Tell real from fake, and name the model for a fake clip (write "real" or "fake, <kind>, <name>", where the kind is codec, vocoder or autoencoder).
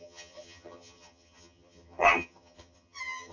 fake, vocoder, HiFi-GAN